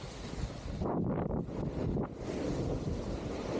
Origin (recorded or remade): remade